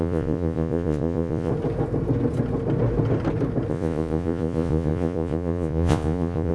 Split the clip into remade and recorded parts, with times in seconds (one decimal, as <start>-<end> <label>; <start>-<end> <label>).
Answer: 0.0-1.5 remade; 1.5-3.7 recorded; 3.7-6.5 remade